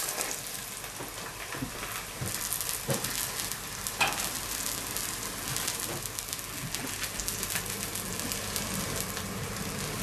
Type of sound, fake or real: real